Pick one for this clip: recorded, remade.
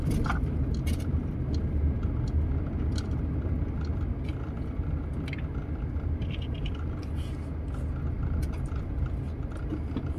recorded